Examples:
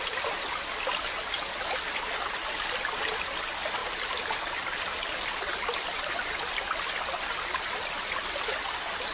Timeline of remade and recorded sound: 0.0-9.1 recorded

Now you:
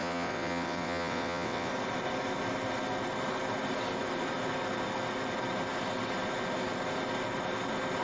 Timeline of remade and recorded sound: 0.0-1.7 remade; 1.7-8.0 recorded

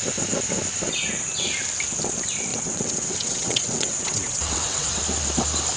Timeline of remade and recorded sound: 0.0-2.5 recorded; 2.5-5.0 remade; 5.0-5.8 recorded